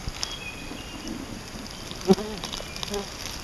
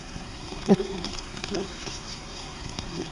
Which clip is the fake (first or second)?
second